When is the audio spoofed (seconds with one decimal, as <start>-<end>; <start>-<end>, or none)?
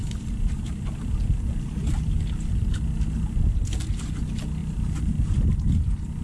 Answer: 0.0-1.7; 4.6-5.5